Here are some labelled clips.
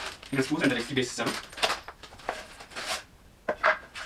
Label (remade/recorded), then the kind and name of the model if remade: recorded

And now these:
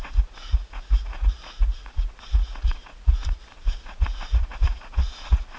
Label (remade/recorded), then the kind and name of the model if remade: remade, vocoder, Vocos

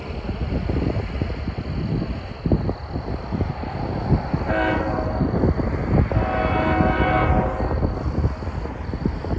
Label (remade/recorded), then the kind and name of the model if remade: recorded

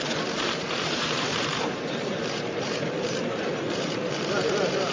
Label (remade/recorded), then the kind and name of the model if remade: remade, vocoder, BigVGAN v2